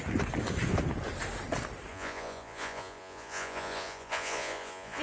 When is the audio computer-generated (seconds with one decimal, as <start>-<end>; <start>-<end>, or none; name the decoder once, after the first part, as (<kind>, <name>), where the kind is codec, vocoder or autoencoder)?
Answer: 1.9-5.0 (vocoder, Vocos)